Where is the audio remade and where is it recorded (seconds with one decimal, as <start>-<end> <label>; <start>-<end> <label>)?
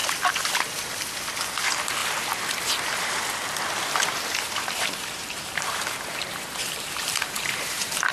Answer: 0.0-5.0 recorded; 5.0-8.1 remade